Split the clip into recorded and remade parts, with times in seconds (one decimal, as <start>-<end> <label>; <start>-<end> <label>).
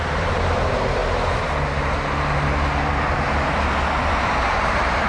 0.0-1.0 remade; 1.0-4.1 recorded; 4.1-5.1 remade